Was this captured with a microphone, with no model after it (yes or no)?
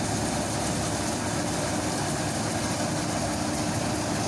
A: yes